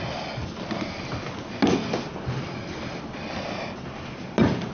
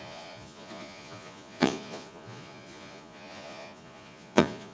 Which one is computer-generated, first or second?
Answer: second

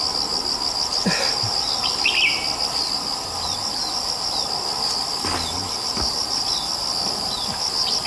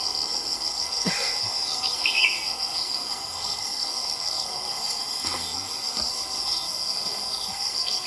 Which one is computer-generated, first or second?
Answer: second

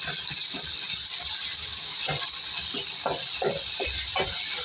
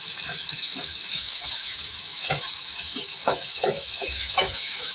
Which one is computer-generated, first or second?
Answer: second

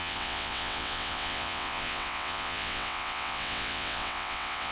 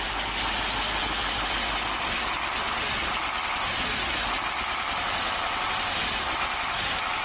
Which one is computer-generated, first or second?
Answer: first